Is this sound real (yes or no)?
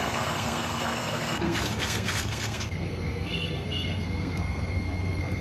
no